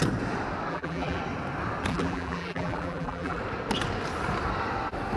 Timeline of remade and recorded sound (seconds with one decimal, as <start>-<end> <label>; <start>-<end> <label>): 0.0-0.7 recorded; 0.7-1.2 remade; 1.2-1.9 recorded; 1.9-3.4 remade; 3.4-5.2 recorded